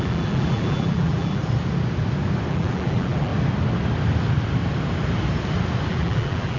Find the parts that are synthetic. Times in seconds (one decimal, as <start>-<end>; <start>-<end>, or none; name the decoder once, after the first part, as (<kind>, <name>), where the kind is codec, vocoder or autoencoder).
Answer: 0.0-1.4 (vocoder, BigVGAN v2); 2.5-3.3; 5.9-6.6